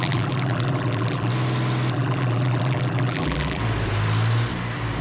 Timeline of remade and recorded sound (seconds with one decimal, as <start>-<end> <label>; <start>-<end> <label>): 0.0-1.3 remade; 1.3-1.9 recorded; 1.9-3.6 remade; 3.6-5.0 recorded